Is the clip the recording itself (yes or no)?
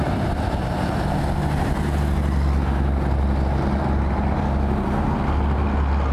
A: yes